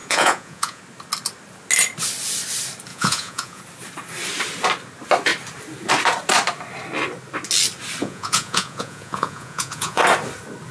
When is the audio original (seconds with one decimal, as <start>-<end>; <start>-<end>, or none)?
0.8-2.9; 3.6-8.0; 10.0-10.7